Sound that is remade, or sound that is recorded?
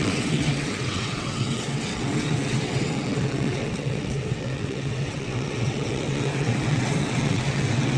remade